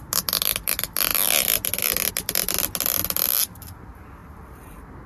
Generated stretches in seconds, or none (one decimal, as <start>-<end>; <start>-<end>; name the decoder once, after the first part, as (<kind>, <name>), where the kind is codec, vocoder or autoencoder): none